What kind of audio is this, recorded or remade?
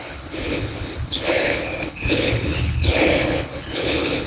remade